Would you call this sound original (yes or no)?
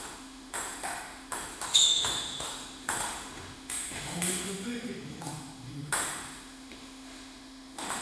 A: no